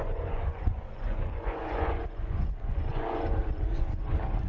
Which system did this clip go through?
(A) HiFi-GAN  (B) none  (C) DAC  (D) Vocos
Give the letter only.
D